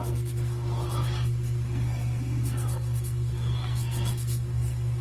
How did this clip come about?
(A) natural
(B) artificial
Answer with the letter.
B